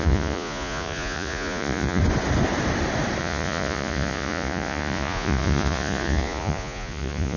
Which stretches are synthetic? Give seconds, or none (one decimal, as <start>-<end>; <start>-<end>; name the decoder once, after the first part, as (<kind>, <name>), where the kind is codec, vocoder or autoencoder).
0.0-2.0 (vocoder, Vocos); 3.2-7.4